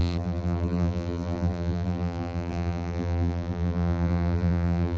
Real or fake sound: fake